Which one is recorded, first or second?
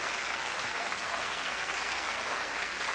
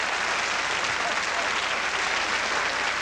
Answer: second